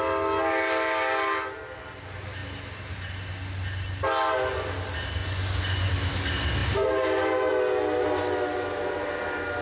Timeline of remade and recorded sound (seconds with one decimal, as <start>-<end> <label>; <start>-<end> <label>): 0.0-5.2 recorded; 5.2-5.9 remade; 5.9-9.6 recorded